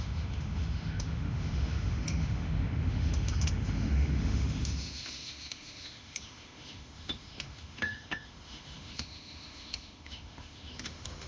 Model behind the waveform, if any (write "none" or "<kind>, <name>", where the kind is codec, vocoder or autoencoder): autoencoder, DAC-VAE